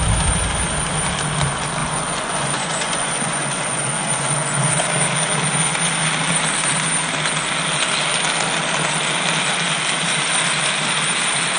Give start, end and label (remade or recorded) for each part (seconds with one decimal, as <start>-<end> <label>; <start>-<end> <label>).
0.0-1.8 recorded; 1.8-4.7 remade; 4.7-11.6 recorded